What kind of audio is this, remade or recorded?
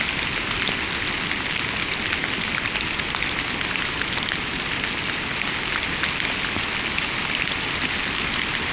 recorded